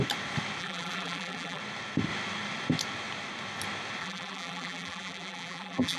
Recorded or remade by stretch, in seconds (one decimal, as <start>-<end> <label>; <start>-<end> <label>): 0.0-0.6 recorded; 0.6-1.6 remade; 1.6-4.0 recorded; 4.0-6.0 remade